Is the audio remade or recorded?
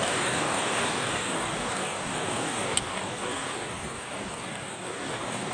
remade